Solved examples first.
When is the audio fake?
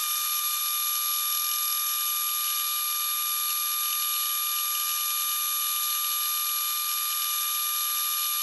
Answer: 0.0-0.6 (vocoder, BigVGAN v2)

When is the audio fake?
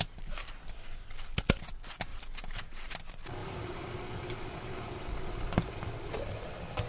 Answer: 2.1-2.9 (vocoder, BigVGAN v2); 3.4-4.0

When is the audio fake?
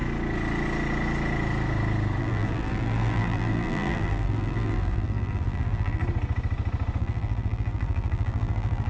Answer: 2.2-6.0 (vocoder, BigVGAN v2); 7.0-8.9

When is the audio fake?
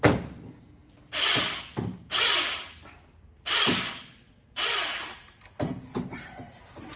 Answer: 0.8-1.4 (vocoder, BigVGAN v2)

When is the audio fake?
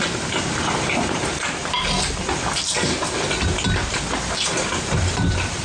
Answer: 0.0-1.6 (vocoder, BigVGAN v2); 4.6-5.6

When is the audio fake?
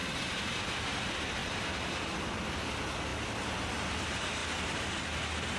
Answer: 0.0-0.8 (vocoder, BigVGAN v2); 1.4-2.7; 4.4-5.0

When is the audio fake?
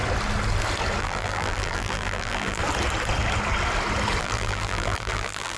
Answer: 1.0-2.6 (vocoder, BigVGAN v2); 4.2-5.6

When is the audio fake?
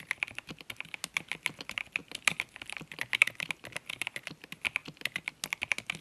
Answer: 4.8-5.3 (vocoder, BigVGAN v2)